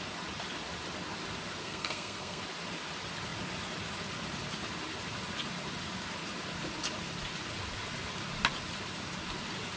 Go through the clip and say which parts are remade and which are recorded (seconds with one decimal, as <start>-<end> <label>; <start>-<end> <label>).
0.0-1.6 recorded; 1.6-2.4 remade; 2.4-9.8 recorded